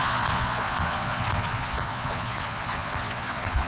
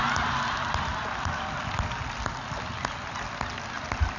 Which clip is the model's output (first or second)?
first